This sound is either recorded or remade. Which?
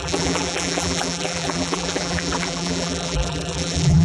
remade